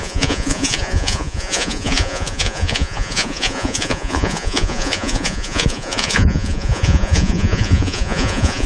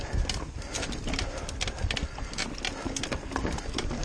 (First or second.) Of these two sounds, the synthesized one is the first